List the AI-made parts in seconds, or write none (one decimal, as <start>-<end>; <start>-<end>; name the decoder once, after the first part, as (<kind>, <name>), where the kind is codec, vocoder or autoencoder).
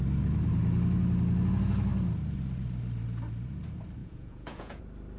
4.0-4.8 (vocoder, Vocos)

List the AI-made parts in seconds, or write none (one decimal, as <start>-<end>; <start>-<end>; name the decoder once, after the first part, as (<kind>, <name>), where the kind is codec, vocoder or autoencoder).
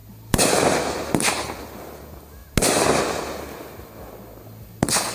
none